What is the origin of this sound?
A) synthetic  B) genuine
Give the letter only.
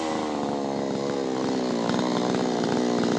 B